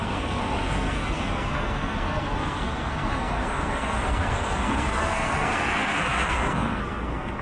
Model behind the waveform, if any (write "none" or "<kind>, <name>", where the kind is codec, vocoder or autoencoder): codec, SNAC